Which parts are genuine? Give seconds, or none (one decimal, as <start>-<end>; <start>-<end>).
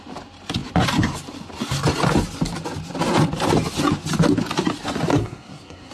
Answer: 0.0-5.1